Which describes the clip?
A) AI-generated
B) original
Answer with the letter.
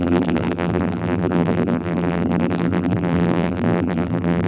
A